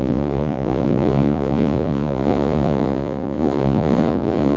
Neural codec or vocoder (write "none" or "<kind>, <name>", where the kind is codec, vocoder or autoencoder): vocoder, Vocos